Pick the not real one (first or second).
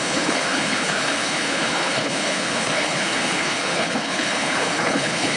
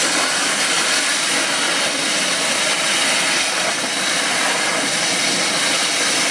first